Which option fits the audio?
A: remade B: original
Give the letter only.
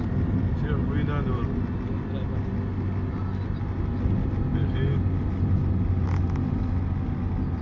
B